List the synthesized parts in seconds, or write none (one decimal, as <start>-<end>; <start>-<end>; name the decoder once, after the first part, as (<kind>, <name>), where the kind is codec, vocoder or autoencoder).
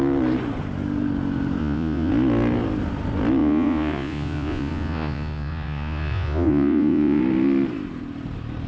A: 1.6-2.1 (vocoder, Vocos); 3.4-7.2